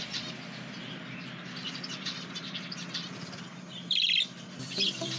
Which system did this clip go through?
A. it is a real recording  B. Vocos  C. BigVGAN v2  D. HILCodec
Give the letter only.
C